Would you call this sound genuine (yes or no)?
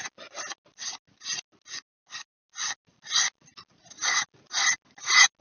yes